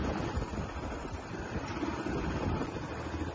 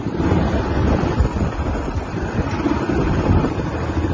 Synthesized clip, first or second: second